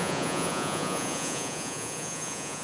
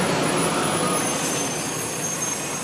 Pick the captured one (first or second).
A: second